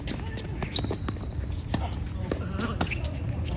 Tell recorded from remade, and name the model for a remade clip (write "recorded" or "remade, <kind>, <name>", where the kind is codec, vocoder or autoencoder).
recorded